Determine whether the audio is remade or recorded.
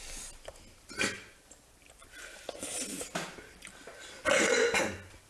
recorded